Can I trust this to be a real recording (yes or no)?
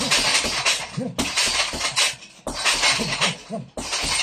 yes